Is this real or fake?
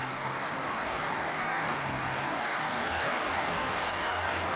fake